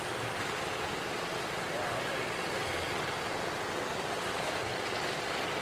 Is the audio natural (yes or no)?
yes